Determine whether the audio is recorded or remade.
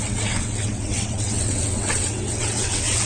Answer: remade